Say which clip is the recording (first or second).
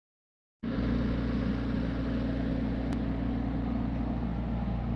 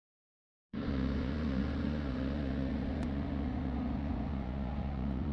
first